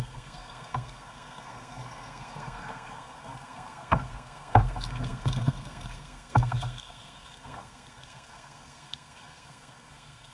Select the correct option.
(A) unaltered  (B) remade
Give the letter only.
B